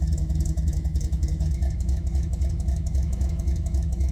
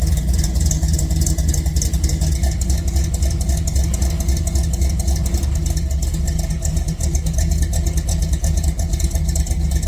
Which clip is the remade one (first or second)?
first